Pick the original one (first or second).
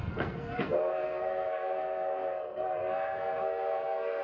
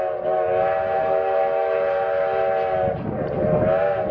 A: second